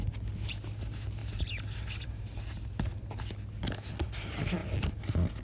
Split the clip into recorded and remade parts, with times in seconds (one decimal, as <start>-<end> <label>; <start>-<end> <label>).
0.0-5.4 recorded